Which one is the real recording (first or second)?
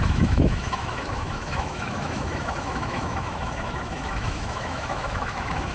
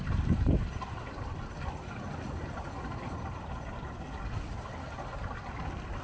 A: second